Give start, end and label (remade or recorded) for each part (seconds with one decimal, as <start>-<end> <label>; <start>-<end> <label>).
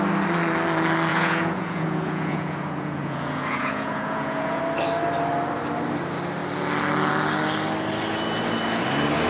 0.0-1.1 recorded; 1.1-4.6 remade; 4.6-9.3 recorded